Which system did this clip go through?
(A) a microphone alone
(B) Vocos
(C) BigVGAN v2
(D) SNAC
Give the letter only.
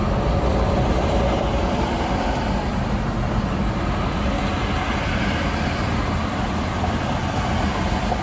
A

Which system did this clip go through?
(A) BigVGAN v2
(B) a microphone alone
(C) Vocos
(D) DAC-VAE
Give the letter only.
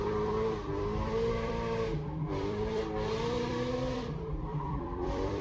A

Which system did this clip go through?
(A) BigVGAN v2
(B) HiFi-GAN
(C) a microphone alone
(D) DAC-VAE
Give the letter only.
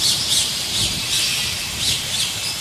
A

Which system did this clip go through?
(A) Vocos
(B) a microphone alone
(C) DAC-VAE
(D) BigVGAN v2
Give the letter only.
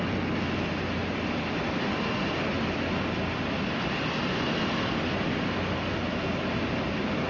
B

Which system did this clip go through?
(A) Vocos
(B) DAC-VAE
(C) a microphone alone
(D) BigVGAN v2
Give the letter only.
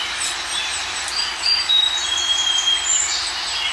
C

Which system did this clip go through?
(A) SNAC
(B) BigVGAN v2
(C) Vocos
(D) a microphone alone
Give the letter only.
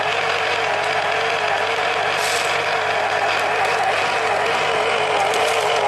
D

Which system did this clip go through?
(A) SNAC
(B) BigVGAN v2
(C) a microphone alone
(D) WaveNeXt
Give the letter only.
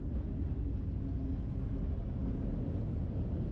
C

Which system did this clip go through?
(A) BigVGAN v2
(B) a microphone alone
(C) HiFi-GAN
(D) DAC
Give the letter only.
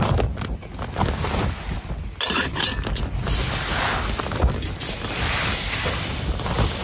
B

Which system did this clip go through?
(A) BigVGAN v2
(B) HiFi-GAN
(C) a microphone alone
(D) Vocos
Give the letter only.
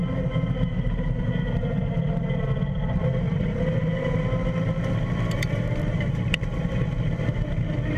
A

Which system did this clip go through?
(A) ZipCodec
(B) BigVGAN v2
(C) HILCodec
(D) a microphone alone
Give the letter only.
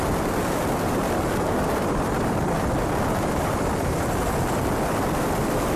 B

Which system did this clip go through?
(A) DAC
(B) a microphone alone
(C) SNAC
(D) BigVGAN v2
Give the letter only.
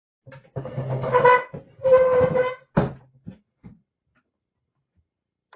D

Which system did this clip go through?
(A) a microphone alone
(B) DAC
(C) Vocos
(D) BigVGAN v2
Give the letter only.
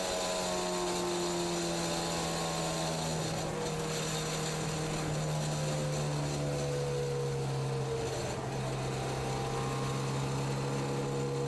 A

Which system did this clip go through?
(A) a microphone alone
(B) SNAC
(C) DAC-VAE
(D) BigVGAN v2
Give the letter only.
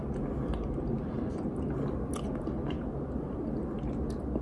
A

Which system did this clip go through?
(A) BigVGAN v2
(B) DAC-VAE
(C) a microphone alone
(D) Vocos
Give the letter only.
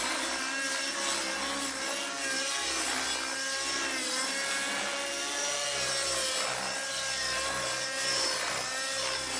C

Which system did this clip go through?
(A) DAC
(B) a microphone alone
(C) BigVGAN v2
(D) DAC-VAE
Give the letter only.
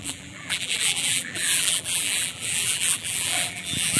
C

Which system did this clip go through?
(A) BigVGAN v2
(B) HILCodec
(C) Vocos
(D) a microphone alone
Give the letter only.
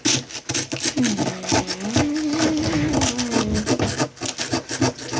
D